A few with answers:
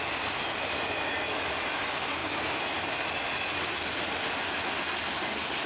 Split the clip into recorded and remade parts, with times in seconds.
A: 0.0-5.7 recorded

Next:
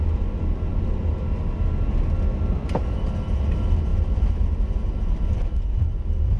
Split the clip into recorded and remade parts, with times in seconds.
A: 0.0-6.4 recorded

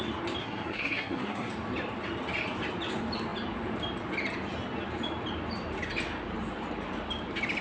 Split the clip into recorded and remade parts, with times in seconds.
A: 0.0-0.4 recorded; 0.4-1.5 remade; 1.5-7.6 recorded

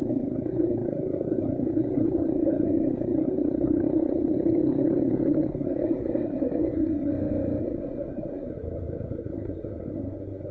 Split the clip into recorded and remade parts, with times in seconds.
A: 0.0-7.1 remade; 7.1-7.6 recorded; 7.6-10.5 remade

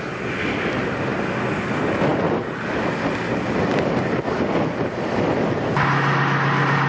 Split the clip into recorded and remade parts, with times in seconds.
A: 0.0-6.9 recorded

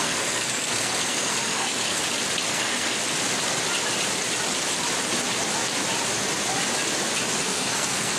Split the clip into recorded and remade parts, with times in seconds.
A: 0.0-2.0 remade; 2.0-2.5 recorded; 2.5-3.0 remade; 3.0-7.4 recorded; 7.4-8.2 remade

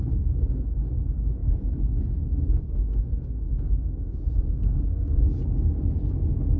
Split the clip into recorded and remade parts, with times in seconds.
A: 0.0-5.2 remade; 5.2-6.6 recorded